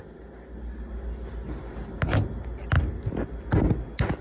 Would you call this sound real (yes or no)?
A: yes